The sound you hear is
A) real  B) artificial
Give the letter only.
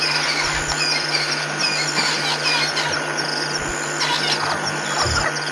A